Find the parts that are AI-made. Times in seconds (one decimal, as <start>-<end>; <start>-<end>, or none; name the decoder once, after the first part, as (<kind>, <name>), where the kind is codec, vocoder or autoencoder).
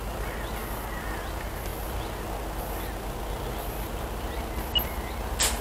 none